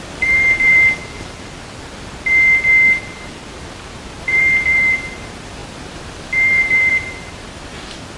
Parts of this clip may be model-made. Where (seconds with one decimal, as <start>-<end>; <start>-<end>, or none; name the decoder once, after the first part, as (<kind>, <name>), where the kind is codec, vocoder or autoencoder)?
0.0-1.0 (vocoder, BigVGAN v2); 4.2-8.2